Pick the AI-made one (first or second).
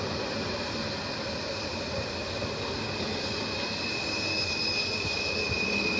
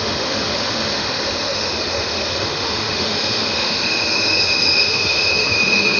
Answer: second